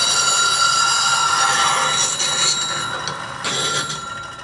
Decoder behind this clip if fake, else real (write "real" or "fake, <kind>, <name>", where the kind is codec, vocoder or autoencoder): real